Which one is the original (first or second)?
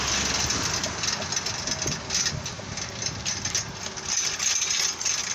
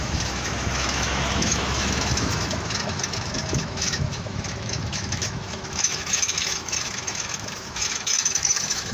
first